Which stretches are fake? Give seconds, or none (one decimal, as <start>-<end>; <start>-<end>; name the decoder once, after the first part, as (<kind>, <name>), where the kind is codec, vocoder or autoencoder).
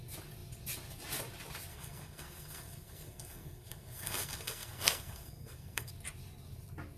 1.7-5.9 (codec, SNAC)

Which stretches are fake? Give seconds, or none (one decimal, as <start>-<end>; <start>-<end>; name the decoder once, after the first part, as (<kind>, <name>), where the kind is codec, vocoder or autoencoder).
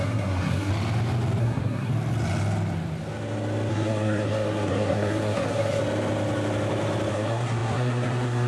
0.0-0.7 (codec, SNAC); 1.4-1.9; 3.7-5.8; 7.1-8.5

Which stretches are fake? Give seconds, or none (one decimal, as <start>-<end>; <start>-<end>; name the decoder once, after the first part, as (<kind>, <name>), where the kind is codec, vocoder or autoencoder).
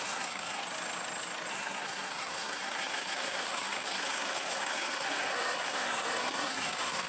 0.0-0.6 (codec, SNAC); 1.5-7.1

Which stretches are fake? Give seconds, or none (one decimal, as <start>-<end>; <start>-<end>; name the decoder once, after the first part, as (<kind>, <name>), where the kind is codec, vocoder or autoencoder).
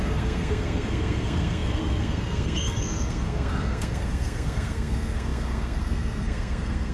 0.0-6.9 (codec, SNAC)